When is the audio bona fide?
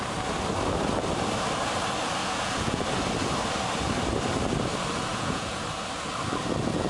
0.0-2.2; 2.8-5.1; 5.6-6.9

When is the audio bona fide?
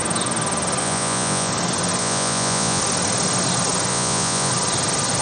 0.0-0.8; 1.5-2.0; 2.8-3.9; 4.5-5.2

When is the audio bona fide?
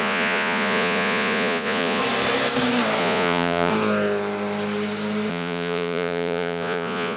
2.0-3.0; 3.7-5.3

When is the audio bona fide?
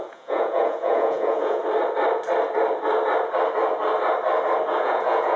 1.6-4.8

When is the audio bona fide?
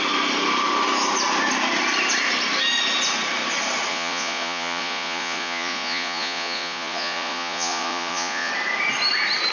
0.0-3.9; 8.5-9.5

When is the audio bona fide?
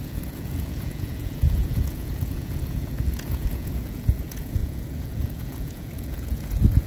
none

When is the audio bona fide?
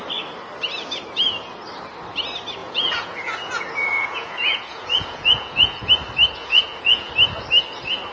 0.0-2.6; 5.9-6.4; 7.1-8.1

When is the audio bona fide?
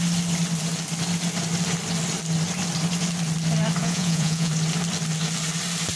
0.0-3.8; 4.5-6.0